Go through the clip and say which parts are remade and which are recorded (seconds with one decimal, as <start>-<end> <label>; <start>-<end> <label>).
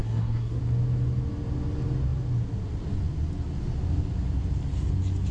0.0-0.6 remade; 0.6-5.3 recorded